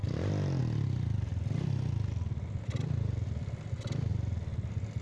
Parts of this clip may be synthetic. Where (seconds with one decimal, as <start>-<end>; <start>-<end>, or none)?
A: none